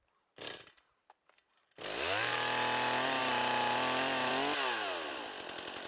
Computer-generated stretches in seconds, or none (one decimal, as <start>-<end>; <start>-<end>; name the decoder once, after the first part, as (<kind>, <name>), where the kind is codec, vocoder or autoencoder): none